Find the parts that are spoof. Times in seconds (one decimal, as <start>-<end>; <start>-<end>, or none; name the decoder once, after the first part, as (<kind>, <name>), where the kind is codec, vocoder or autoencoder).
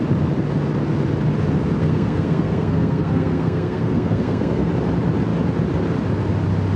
1.8-4.7 (codec, SNAC)